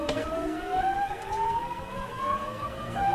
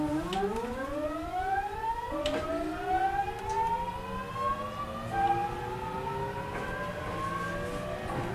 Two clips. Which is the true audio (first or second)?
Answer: second